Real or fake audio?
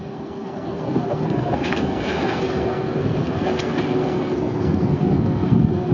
fake